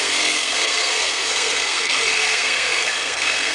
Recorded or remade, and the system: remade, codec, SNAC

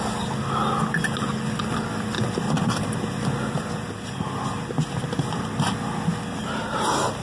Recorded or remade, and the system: recorded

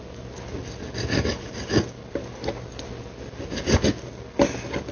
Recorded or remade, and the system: recorded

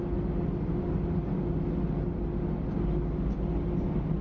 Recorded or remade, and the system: recorded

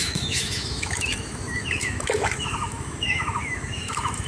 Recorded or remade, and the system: remade, autoencoder, DAC-VAE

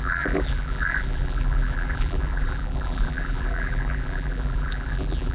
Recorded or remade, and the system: remade, vocoder, BigVGAN v2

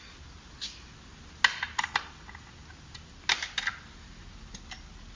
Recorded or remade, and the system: recorded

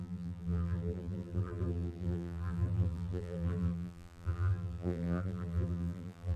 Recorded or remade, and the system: remade, vocoder, BigVGAN v2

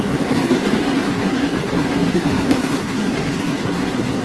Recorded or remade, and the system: remade, codec, SNAC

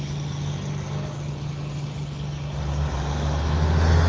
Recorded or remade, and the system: recorded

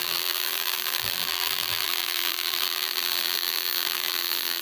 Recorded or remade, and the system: remade, vocoder, BigVGAN v2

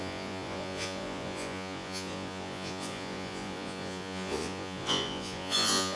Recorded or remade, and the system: remade, vocoder, Vocos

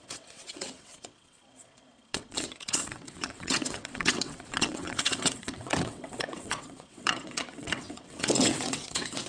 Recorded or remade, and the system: remade, vocoder, WaveNeXt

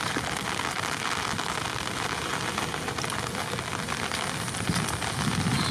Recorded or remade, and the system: recorded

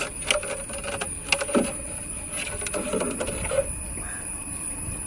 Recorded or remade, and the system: recorded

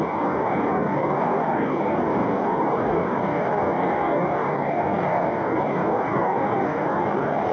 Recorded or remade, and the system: remade, codec, DAC